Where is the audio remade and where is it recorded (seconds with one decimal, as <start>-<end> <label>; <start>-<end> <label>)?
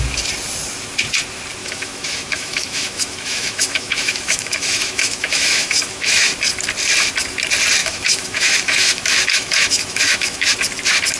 0.0-1.6 recorded; 1.6-6.3 remade; 6.3-7.8 recorded; 7.8-10.5 remade; 10.5-11.2 recorded